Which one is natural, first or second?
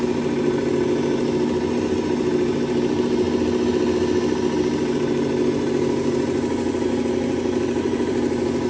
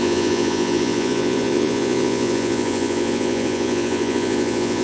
first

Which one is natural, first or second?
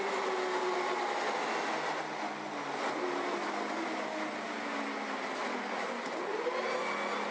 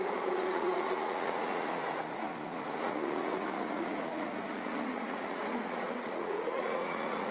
first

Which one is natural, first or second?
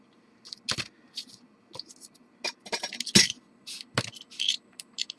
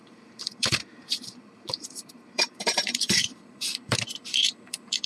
first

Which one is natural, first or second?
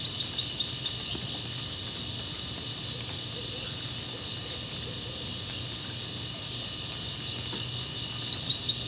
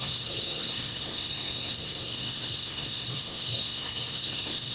first